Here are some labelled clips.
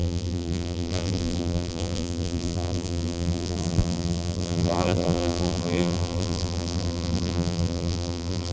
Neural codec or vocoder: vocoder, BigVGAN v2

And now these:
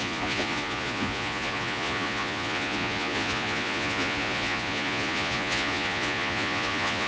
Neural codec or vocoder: vocoder, Vocos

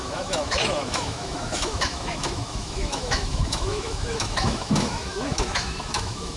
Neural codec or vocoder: autoencoder, DAC-VAE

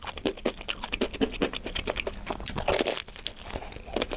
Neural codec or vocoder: none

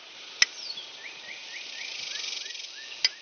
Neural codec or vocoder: none